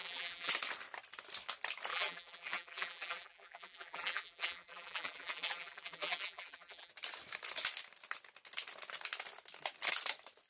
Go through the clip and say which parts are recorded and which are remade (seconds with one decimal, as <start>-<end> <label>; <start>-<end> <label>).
0.0-0.5 remade; 0.5-1.9 recorded; 1.9-6.9 remade; 6.9-10.5 recorded